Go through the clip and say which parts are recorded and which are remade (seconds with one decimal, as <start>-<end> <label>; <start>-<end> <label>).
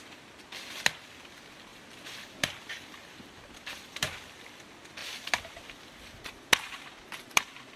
0.0-1.7 recorded; 1.7-4.6 remade; 4.6-5.0 recorded; 5.0-7.8 remade